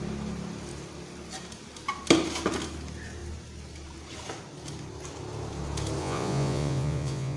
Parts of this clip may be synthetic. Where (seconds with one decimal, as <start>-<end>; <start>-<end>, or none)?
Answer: 6.0-7.4

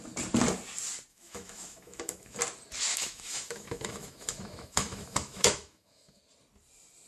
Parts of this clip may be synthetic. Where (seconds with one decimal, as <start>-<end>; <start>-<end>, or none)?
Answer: 1.1-2.4; 2.9-6.2